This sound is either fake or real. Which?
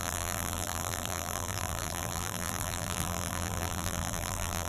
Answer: fake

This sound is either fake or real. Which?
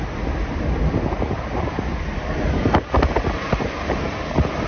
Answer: real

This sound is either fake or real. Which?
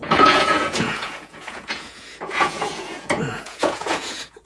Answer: fake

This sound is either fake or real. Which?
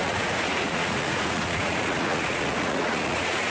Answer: fake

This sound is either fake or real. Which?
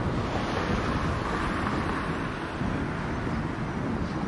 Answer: real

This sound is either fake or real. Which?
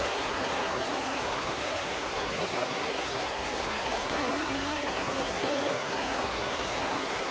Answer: fake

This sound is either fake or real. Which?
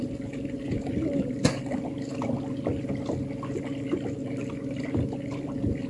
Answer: real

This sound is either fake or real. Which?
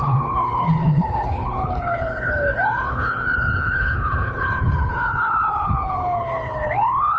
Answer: fake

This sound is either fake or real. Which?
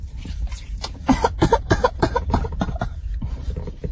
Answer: fake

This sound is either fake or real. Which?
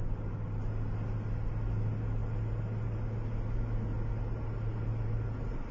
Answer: real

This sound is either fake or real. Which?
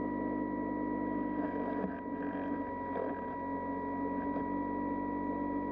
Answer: real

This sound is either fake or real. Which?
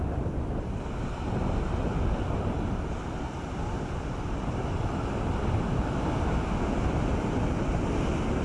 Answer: real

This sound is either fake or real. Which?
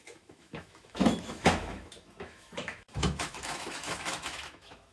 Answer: fake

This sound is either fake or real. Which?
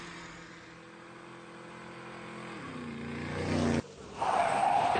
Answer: real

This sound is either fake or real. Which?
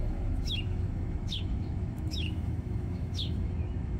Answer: fake